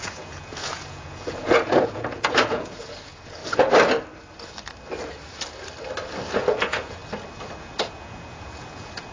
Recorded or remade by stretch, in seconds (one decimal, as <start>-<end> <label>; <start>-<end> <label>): 0.0-3.4 remade; 3.4-6.3 recorded; 6.3-7.0 remade; 7.0-7.6 recorded; 7.6-9.1 remade